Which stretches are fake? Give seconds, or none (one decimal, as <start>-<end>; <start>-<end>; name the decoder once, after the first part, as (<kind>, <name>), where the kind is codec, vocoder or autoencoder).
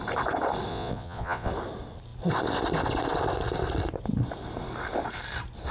0.7-1.5 (vocoder, Vocos)